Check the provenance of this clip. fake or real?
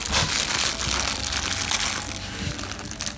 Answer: real